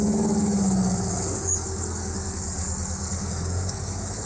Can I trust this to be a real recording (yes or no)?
no